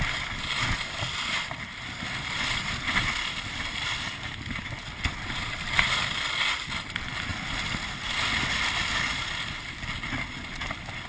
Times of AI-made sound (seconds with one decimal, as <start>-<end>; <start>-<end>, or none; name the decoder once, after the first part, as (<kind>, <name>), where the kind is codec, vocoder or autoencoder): none